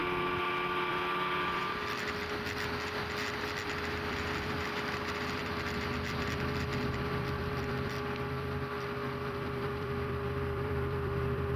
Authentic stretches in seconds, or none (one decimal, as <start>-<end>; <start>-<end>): 0.0-0.9